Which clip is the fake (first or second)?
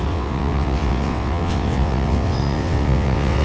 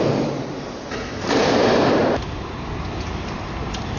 first